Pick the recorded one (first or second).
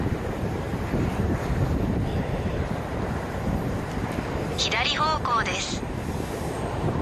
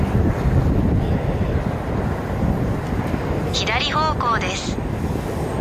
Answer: second